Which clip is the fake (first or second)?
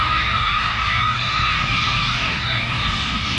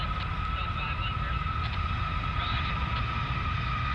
first